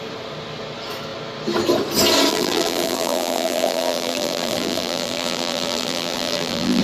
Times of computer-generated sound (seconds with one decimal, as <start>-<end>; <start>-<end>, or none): 2.3-6.8